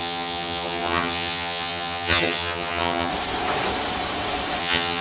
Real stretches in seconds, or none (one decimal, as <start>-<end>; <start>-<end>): 3.1-4.6